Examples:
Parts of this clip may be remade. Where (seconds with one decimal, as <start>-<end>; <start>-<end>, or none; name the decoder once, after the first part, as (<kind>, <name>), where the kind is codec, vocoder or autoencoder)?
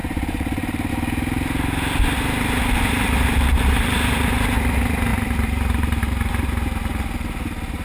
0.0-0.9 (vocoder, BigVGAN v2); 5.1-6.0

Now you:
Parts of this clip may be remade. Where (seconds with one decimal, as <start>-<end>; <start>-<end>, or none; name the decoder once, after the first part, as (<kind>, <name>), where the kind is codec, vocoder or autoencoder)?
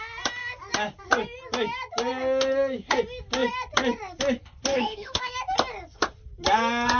4.7-5.3 (autoencoder, DAC-VAE)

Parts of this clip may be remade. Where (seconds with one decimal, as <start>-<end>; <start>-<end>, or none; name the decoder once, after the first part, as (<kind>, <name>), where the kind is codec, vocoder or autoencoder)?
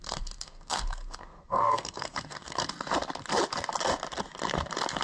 0.0-2.7 (codec, SNAC)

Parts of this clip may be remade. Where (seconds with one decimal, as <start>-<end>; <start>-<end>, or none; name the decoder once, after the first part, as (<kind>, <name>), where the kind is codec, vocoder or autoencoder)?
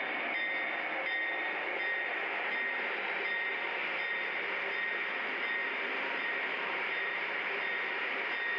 5.6-7.6 (vocoder, BigVGAN v2)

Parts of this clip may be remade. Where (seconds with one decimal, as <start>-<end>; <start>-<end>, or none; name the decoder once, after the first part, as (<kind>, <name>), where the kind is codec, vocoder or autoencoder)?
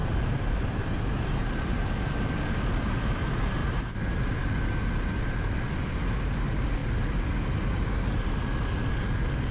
0.0-2.1 (vocoder, BigVGAN v2); 3.6-4.3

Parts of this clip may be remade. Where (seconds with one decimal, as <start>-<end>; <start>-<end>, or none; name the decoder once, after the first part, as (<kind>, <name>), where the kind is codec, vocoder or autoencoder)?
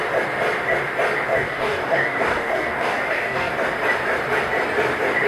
1.3-3.5 (codec, DAC)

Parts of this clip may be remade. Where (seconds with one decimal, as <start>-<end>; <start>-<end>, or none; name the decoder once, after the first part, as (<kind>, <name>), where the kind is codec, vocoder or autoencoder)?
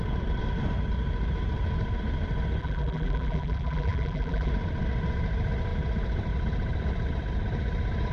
2.6-4.5 (vocoder, BigVGAN v2)